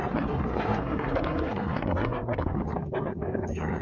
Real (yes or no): no